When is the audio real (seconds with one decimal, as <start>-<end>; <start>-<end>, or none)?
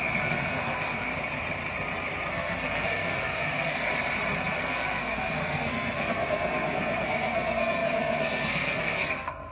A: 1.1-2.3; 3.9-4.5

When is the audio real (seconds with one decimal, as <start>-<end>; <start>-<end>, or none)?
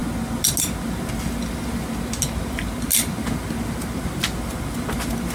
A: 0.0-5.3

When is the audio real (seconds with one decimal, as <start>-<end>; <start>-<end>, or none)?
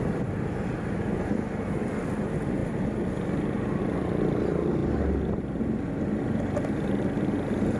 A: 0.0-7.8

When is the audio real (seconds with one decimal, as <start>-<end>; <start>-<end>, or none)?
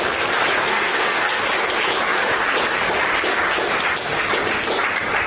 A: 0.0-0.6; 1.4-5.3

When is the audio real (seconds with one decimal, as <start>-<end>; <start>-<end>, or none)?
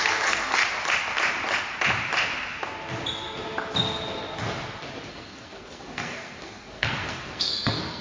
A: 0.6-5.1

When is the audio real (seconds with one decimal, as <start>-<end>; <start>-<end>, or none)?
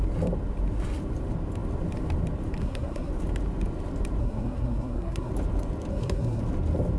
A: 0.0-2.6; 3.1-4.2; 5.3-5.9; 6.4-7.0